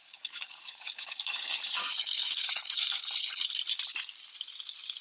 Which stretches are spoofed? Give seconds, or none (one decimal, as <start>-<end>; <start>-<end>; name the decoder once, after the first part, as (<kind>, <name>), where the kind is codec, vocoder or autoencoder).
0.0-3.0 (codec, DAC)